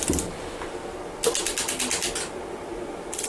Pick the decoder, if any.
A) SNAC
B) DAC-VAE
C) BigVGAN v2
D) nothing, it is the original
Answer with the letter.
D